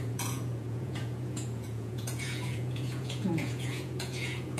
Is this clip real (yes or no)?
no